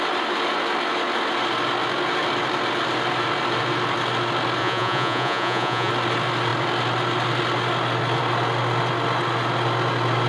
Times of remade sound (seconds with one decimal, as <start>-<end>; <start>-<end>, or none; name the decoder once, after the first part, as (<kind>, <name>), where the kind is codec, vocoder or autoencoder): 4.6-5.9 (vocoder, Vocos)